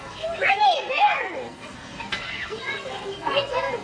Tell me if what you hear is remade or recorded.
remade